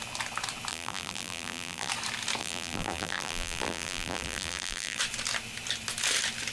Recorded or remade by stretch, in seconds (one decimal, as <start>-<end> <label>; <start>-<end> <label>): 0.0-0.7 recorded; 0.7-1.9 remade; 1.9-2.4 recorded; 2.4-5.0 remade; 5.0-6.5 recorded